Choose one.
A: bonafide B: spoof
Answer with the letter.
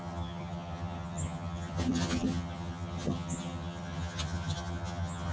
B